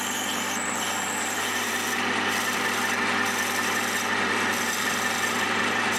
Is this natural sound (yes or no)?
no